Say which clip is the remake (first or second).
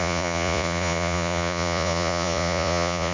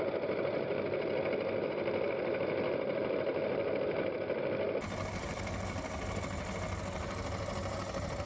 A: first